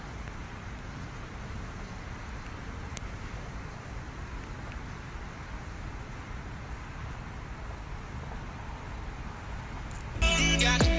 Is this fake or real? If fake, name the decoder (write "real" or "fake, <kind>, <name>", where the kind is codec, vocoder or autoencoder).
real